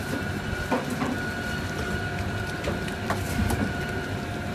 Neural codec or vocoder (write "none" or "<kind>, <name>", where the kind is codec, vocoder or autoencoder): none